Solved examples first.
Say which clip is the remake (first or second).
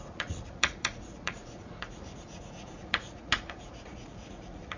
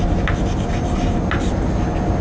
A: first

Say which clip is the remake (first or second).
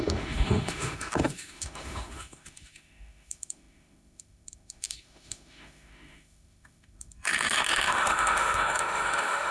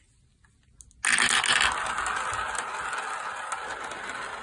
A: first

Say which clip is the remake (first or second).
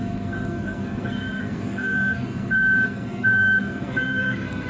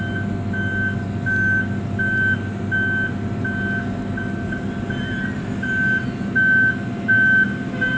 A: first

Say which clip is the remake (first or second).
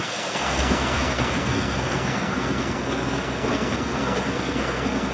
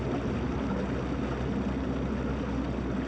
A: first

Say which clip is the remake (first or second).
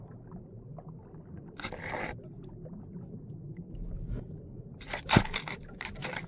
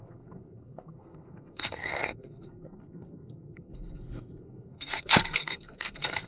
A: second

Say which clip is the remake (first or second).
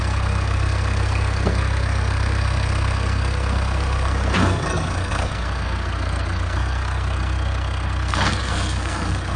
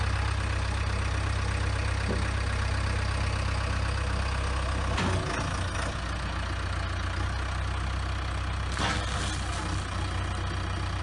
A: first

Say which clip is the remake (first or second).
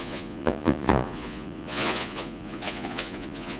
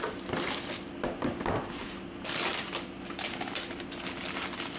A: first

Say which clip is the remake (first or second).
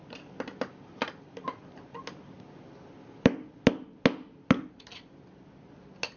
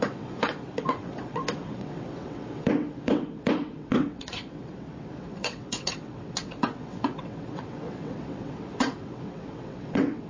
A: second